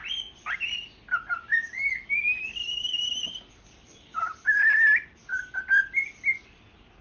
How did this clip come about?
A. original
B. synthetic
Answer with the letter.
A